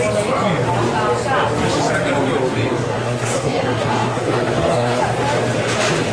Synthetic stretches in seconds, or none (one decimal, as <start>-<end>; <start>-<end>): 2.7-5.0